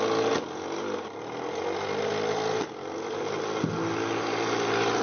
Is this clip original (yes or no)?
yes